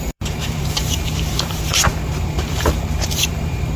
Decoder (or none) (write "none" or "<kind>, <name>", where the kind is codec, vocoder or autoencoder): vocoder, BigVGAN v2